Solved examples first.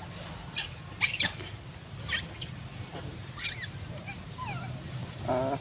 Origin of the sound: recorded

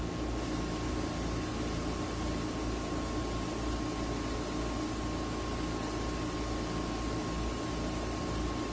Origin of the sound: recorded